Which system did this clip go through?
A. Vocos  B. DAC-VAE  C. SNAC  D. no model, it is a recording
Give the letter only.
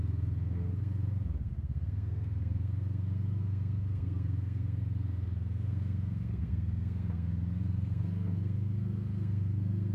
C